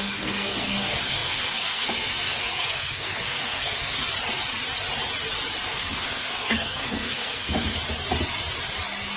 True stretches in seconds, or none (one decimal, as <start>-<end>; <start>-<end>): 4.0-5.7; 7.7-9.2